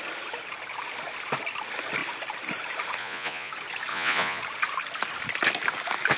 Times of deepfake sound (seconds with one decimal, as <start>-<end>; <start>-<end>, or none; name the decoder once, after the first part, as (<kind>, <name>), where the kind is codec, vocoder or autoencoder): 3.0-3.5 (vocoder, Vocos); 3.9-4.4